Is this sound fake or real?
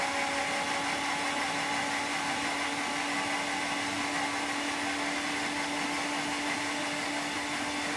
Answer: real